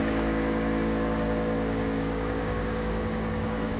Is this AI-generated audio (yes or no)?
yes